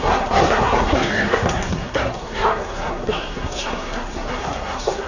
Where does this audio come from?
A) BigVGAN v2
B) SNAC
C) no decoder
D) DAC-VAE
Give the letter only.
B